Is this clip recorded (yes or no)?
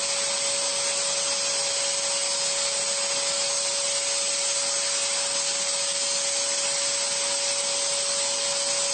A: yes